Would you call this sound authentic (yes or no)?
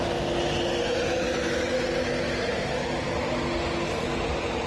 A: yes